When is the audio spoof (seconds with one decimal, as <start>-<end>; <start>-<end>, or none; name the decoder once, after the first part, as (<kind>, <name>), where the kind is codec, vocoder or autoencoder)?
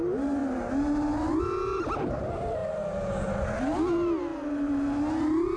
none